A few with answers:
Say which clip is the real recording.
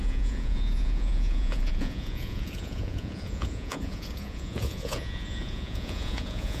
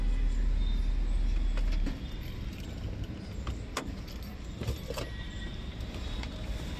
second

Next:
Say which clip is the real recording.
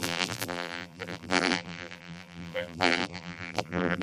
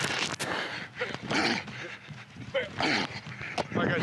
second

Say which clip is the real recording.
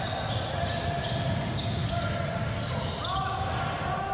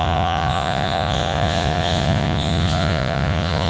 first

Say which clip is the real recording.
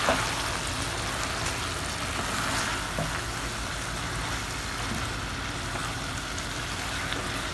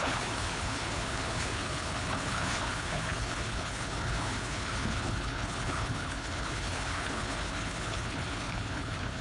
first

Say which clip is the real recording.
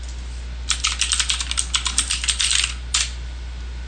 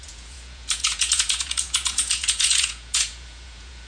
first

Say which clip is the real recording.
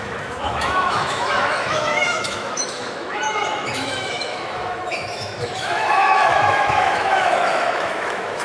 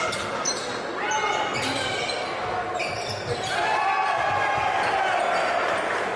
second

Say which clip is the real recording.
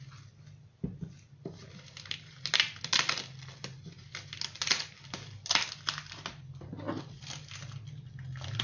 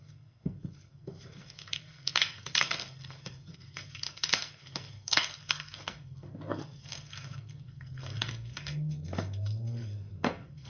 first